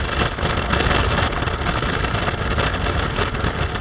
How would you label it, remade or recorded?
recorded